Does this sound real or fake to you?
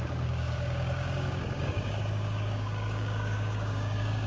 fake